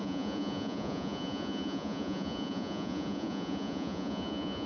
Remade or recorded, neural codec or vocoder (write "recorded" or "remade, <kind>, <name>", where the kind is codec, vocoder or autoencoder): remade, vocoder, Vocos